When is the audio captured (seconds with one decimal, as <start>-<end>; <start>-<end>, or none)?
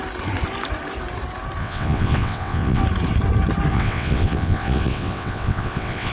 0.0-1.6; 2.8-3.7